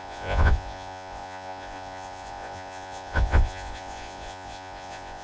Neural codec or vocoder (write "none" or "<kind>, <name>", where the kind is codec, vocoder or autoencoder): vocoder, Vocos